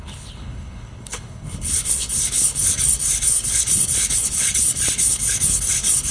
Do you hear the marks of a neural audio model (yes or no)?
yes